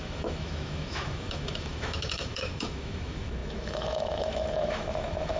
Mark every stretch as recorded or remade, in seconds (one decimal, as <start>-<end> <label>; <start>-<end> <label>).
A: 0.0-5.4 remade